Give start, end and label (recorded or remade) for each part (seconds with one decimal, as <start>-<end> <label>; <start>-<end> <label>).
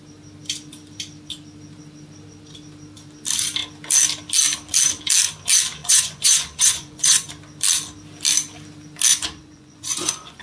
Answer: 0.0-5.8 recorded; 5.8-7.3 remade; 7.3-9.1 recorded; 9.1-10.4 remade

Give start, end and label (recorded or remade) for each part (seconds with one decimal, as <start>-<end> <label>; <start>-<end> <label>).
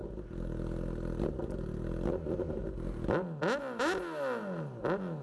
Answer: 0.0-5.2 recorded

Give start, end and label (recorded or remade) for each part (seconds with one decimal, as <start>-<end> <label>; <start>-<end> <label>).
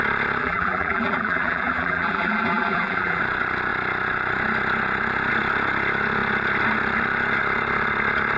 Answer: 0.0-0.4 recorded; 0.4-3.2 remade; 3.2-8.4 recorded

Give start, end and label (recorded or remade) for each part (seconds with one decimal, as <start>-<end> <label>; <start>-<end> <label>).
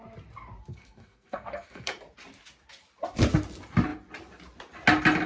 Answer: 0.0-0.7 recorded; 0.7-1.9 remade; 1.9-5.3 recorded